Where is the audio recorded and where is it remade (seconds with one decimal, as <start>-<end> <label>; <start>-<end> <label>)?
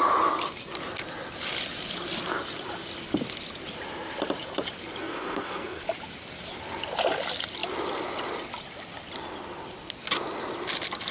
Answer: 0.0-5.0 recorded; 5.0-5.8 remade; 5.8-11.1 recorded